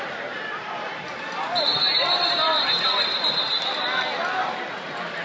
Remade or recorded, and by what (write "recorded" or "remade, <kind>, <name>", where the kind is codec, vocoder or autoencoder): recorded